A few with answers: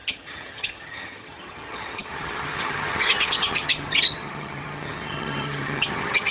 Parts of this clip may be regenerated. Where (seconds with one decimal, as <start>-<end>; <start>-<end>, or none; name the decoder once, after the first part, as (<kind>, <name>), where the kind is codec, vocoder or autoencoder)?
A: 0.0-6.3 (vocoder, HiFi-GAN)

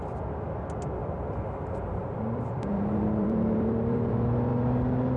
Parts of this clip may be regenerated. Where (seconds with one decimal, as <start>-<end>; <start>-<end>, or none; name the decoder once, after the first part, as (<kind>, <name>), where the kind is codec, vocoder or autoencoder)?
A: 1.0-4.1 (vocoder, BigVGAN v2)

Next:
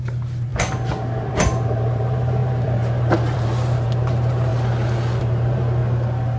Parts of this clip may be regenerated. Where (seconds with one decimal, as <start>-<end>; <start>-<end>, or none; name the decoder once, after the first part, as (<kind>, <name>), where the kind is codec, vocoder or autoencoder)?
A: 0.0-0.5 (vocoder, BigVGAN v2); 1.3-4.5; 5.2-5.8

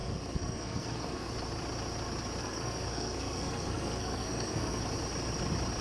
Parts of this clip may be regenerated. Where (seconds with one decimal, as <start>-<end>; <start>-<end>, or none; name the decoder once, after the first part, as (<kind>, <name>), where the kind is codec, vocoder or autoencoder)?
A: 0.0-1.3 (codec, SNAC); 2.4-4.8

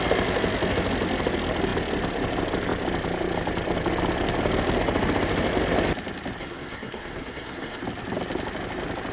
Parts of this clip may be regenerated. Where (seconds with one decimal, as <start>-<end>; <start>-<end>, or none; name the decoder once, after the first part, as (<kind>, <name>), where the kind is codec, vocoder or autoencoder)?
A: 6.4-7.8 (codec, SNAC)

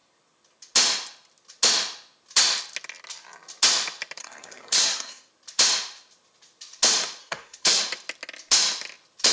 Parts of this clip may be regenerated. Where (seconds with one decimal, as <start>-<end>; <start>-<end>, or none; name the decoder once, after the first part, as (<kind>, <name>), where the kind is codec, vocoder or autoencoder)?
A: 4.2-5.3 (codec, SNAC); 7.2-7.8

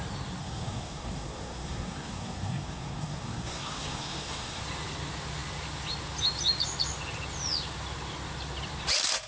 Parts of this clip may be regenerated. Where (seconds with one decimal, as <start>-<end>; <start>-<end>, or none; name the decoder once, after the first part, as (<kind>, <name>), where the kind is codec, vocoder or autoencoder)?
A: 0.4-4.6 (codec, SNAC)